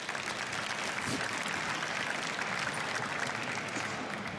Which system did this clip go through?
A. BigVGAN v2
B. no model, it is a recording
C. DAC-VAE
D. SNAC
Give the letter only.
B